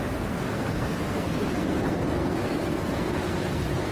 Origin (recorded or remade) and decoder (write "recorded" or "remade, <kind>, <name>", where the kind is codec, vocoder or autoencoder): remade, codec, SNAC